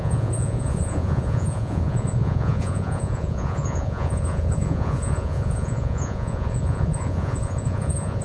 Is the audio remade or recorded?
remade